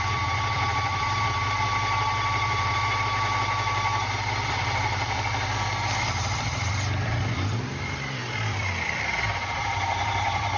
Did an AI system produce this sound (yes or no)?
yes